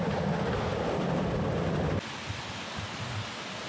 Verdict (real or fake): real